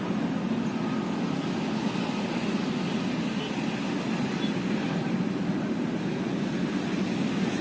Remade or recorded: recorded